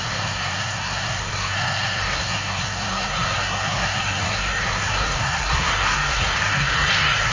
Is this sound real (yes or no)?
no